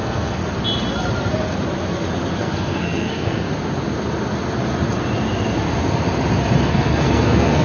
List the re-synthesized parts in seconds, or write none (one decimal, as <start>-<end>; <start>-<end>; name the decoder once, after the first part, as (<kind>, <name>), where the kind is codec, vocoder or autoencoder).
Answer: 0.0-0.4 (codec, SNAC); 2.4-3.5; 6.7-7.6